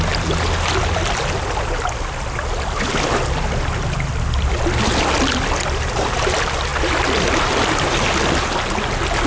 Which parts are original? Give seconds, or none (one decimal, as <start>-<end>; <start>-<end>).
0.0-9.3